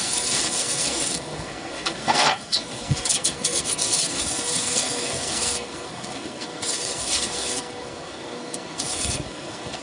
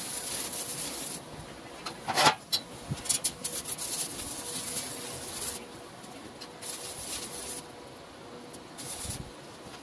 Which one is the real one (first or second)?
second